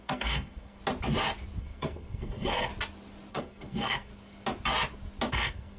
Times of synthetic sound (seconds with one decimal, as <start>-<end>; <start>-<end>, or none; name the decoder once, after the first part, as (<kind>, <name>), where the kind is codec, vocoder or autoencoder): 0.0-0.8 (codec, SNAC); 1.6-2.7; 3.3-4.1; 5.3-5.8